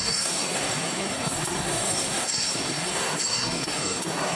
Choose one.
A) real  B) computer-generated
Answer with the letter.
B